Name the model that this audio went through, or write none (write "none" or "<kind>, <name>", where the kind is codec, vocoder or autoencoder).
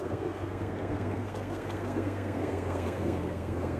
codec, SNAC